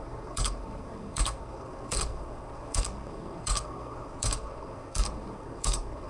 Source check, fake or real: fake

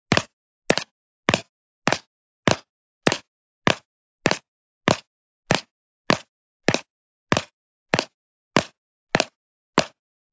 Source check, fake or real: real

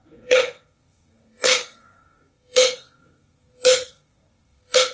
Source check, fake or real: fake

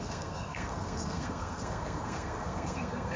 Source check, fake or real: fake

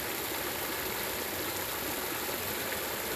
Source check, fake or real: real